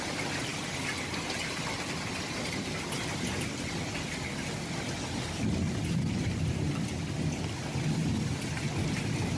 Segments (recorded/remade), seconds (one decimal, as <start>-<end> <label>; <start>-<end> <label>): 0.0-9.4 recorded